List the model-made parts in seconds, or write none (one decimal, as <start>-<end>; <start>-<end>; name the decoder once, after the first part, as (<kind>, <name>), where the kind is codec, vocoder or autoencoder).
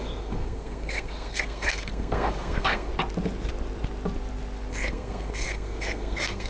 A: 0.0-2.9 (codec, SNAC); 4.7-6.5